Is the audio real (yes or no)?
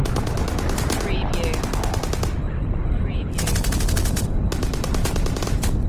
yes